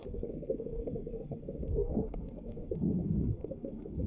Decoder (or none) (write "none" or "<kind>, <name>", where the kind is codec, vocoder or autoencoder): codec, SNAC